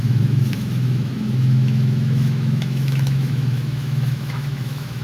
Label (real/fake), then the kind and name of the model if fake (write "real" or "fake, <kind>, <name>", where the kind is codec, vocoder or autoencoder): fake, autoencoder, DAC-VAE